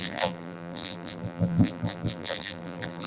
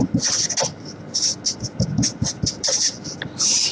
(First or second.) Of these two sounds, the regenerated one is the first